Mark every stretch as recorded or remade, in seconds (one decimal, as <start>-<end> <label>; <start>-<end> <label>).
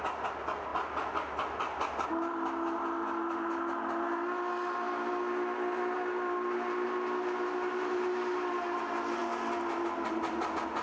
0.0-10.8 recorded